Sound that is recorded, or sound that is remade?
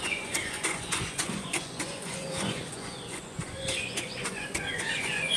remade